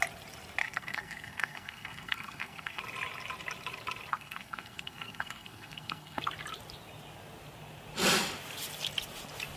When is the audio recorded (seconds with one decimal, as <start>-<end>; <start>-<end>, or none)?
0.0-0.6; 2.8-4.1; 6.2-9.6